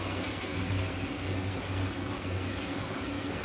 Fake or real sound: fake